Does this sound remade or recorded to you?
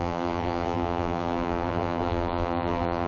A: remade